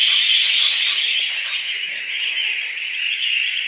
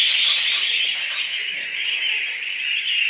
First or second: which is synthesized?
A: first